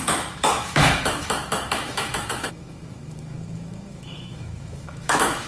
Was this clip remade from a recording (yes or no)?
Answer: yes